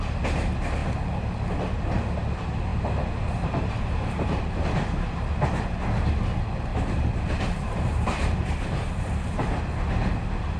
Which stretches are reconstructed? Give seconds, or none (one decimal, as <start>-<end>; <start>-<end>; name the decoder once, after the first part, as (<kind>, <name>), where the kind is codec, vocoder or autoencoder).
2.7-4.2 (vocoder, BigVGAN v2); 6.7-9.8